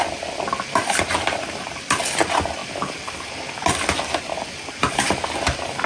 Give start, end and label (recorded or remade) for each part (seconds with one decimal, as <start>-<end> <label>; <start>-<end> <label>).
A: 0.0-0.8 recorded; 0.8-2.0 remade; 2.0-5.9 recorded